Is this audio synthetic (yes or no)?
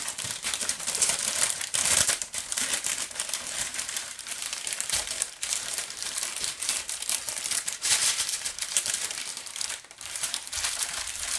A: yes